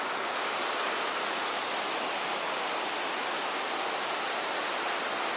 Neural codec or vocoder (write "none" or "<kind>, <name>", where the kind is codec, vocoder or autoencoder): none